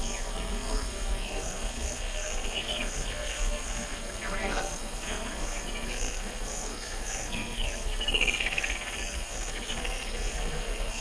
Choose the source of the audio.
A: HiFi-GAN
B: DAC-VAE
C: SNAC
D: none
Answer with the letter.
C